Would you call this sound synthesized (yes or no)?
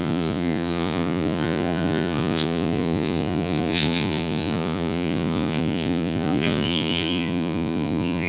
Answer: yes